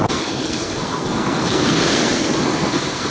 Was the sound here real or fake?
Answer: fake